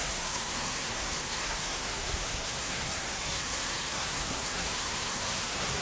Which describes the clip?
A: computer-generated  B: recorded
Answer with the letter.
A